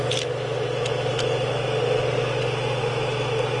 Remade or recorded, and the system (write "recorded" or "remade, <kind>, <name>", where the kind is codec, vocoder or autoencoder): recorded